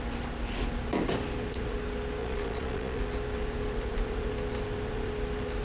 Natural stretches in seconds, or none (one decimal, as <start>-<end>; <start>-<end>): 0.0-2.2; 3.0-5.6